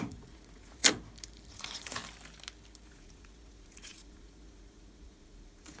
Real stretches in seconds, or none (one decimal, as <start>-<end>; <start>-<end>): 0.8-1.5; 2.0-2.9

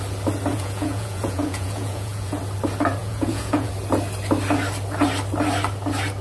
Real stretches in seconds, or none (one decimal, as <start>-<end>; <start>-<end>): 0.0-0.5; 2.4-3.0; 3.7-6.2

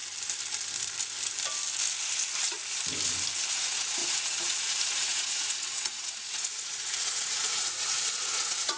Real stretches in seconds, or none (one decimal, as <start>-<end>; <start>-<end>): 0.0-3.5

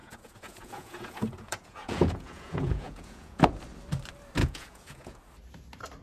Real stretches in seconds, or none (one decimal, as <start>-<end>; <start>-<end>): 3.6-4.4; 5.2-6.0

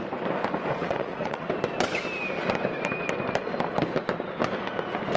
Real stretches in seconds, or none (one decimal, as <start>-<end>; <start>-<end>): 0.0-0.8; 1.5-5.2

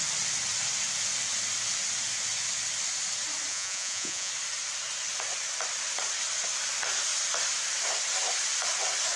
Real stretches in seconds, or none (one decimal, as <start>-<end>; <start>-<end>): 0.0-3.5; 4.3-9.2

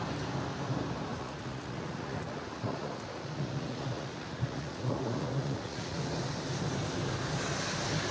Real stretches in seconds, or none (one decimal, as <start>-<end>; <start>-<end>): 0.0-1.1; 6.0-8.1

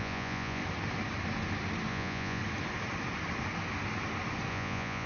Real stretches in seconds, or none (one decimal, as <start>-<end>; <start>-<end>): 0.6-1.9; 2.4-4.5